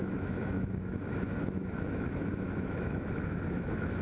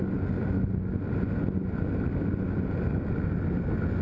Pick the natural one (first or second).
second